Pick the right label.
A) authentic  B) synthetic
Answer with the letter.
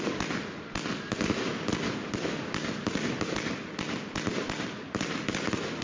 A